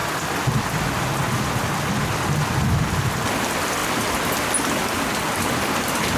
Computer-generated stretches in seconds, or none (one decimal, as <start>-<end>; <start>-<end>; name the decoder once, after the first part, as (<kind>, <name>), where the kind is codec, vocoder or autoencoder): none